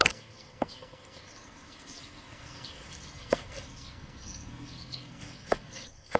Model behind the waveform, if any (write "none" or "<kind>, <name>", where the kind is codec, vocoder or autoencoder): codec, SNAC